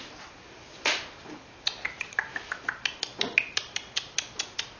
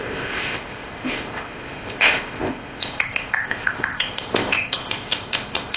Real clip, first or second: first